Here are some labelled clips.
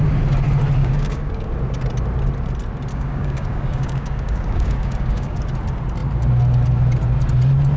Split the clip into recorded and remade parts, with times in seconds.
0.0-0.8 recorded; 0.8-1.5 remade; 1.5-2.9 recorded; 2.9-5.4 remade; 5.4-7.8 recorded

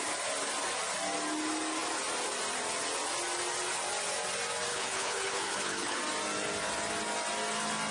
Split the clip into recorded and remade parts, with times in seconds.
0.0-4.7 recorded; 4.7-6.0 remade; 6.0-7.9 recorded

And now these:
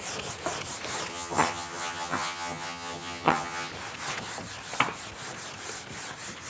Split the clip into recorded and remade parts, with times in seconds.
0.0-1.1 recorded; 1.1-3.7 remade; 3.7-6.5 recorded

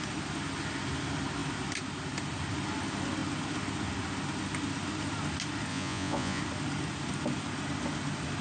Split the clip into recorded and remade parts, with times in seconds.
0.0-5.7 recorded; 5.7-6.4 remade; 6.4-8.4 recorded

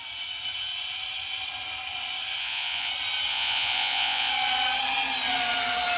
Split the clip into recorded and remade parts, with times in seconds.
0.0-2.4 recorded; 2.4-2.9 remade; 2.9-3.3 recorded; 3.3-4.3 remade; 4.3-6.0 recorded